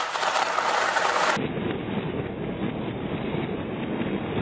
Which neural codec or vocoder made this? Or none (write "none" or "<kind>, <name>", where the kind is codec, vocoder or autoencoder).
vocoder, BigVGAN v2